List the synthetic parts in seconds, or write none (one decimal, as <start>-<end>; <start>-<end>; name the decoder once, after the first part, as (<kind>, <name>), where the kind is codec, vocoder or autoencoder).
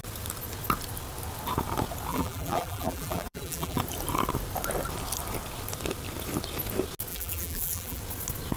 2.1-3.8 (vocoder, BigVGAN v2); 7.1-8.0